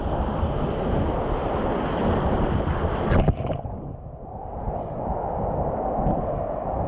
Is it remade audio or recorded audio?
recorded